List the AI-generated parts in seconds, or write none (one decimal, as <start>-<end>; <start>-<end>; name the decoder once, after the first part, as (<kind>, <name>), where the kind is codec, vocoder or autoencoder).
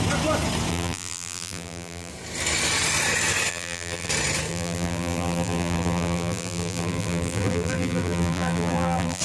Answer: 0.7-2.1 (vocoder, BigVGAN v2); 3.5-4.1; 4.5-9.2